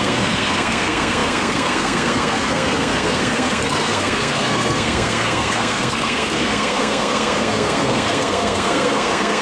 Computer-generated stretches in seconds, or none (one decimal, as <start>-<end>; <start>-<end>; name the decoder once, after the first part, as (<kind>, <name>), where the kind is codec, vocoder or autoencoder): 0.0-9.4 (codec, SNAC)